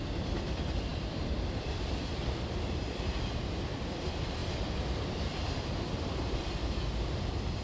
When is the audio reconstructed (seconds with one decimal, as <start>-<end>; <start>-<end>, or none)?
0.0-7.6